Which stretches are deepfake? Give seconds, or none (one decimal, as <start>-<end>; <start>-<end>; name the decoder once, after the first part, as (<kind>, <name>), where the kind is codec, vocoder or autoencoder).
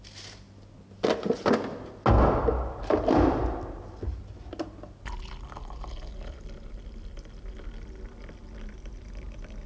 none